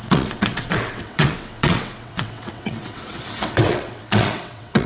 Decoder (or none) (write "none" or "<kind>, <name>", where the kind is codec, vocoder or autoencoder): vocoder, WaveNeXt